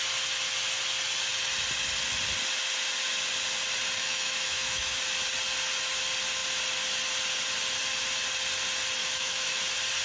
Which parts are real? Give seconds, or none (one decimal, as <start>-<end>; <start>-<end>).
0.0-4.0; 5.0-9.0; 9.6-10.0

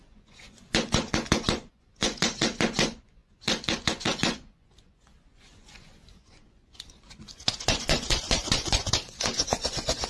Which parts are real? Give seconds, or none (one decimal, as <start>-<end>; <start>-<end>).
none

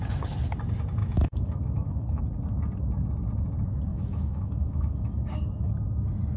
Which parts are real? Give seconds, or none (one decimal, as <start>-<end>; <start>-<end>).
0.0-1.0; 2.2-3.9; 5.7-6.4

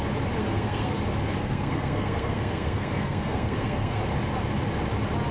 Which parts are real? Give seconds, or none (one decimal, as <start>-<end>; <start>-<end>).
0.0-0.4; 1.0-1.4; 4.0-5.3

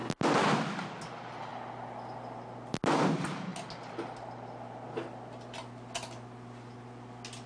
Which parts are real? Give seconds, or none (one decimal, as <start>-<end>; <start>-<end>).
0.0-7.5

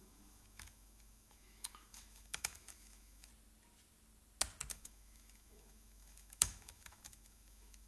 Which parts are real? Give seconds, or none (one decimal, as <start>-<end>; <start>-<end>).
3.3-4.7

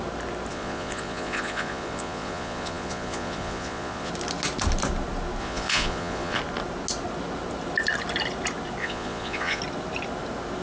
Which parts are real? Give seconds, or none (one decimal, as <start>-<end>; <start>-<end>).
0.0-0.5; 4.1-5.4; 6.4-8.8; 9.6-10.6

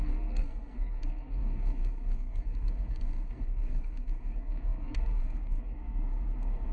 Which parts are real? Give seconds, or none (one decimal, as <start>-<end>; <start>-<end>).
none